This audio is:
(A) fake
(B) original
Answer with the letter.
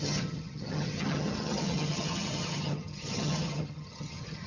A